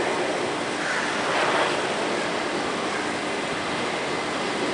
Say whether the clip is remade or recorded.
recorded